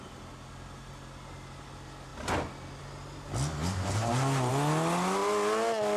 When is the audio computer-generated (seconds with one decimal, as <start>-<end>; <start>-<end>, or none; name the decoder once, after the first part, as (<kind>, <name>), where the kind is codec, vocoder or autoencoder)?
none